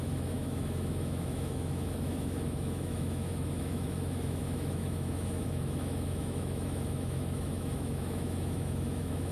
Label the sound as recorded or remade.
remade